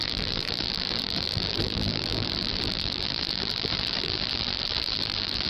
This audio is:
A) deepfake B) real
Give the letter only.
A